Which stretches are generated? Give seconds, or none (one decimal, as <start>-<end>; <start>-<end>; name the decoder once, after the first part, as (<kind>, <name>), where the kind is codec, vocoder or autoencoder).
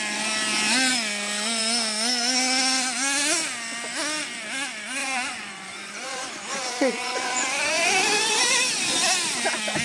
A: 5.0-8.6 (vocoder, Vocos)